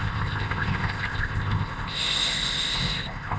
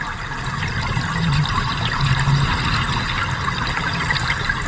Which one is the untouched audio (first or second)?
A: second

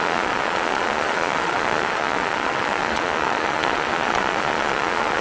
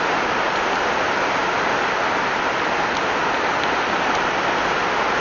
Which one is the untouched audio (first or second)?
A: second